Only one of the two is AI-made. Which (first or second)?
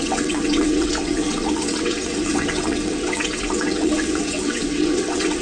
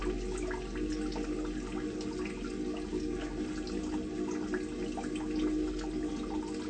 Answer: first